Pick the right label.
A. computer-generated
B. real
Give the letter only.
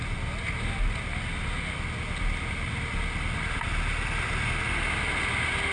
B